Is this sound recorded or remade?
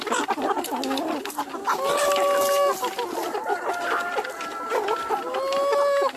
recorded